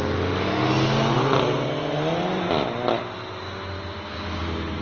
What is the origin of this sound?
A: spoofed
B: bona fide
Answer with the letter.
B